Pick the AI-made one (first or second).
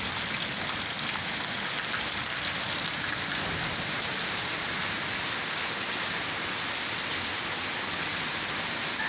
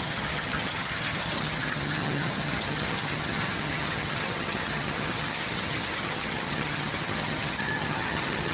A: second